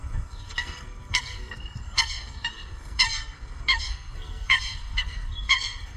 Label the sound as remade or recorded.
remade